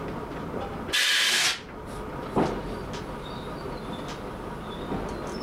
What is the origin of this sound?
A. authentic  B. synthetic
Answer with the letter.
A